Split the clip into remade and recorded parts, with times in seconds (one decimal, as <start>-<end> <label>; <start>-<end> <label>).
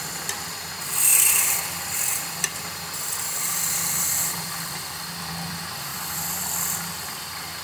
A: 0.0-7.6 remade